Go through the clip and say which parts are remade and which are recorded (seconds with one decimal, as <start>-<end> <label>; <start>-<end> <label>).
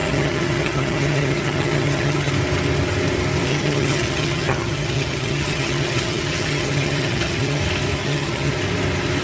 0.0-2.3 remade; 2.3-3.5 recorded; 3.5-7.6 remade; 7.6-8.0 recorded; 8.0-8.5 remade; 8.5-9.2 recorded